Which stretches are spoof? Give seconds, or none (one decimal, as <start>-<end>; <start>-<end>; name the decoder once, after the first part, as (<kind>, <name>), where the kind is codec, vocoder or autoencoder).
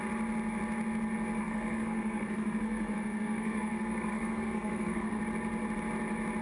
1.4-5.2 (codec, SNAC)